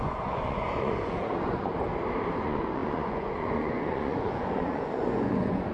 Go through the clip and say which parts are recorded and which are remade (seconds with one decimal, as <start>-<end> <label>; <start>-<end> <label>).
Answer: 0.0-1.7 remade; 1.7-2.4 recorded; 2.4-5.7 remade